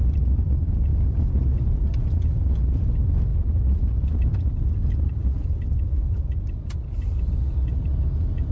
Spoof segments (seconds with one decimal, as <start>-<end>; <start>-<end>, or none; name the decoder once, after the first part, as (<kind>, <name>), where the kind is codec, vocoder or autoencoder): 0.0-0.9 (vocoder, BigVGAN v2); 1.7-8.5